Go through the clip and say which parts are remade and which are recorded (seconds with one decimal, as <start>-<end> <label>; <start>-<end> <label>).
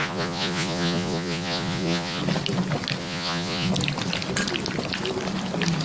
0.0-2.2 remade; 2.2-3.0 recorded; 3.0-3.7 remade; 3.7-5.8 recorded